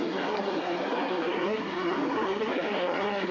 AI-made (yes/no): yes